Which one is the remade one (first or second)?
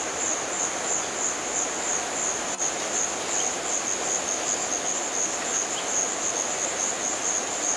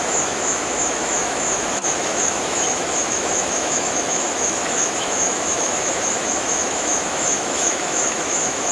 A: second